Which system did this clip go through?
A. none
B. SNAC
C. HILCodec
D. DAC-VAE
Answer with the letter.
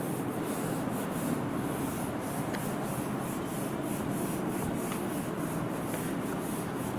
A